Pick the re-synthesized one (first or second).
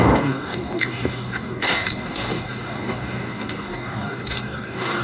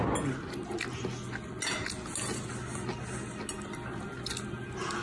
first